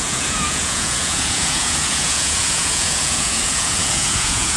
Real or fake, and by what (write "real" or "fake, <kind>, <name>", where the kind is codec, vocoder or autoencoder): fake, vocoder, Vocos